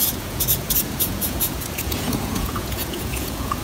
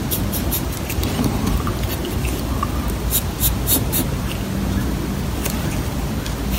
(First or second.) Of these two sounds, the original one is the second